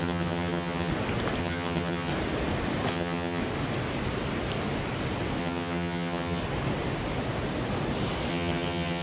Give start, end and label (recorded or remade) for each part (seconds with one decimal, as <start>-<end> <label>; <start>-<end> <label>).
0.0-0.9 remade; 0.9-1.4 recorded; 1.4-2.1 remade; 2.1-2.9 recorded; 2.9-3.4 remade; 3.4-5.4 recorded; 5.4-6.4 remade; 6.4-8.3 recorded; 8.3-9.0 remade